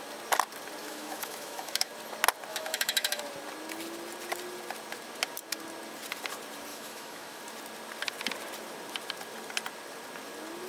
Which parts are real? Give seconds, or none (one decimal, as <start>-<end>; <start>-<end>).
0.0-0.8; 1.9-2.5; 3.2-6.7; 7.4-10.7